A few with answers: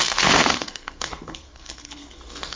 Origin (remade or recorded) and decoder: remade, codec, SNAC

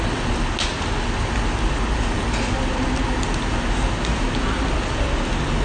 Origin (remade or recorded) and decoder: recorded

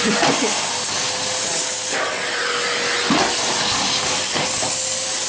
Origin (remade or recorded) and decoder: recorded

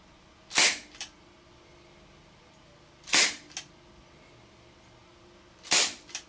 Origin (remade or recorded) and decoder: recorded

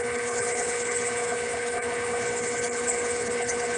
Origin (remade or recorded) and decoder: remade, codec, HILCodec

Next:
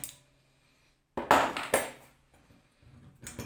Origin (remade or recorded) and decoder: recorded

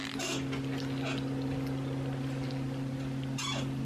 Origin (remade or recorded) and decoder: recorded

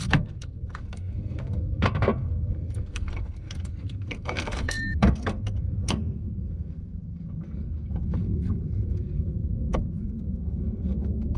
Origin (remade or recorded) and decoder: remade, codec, SNAC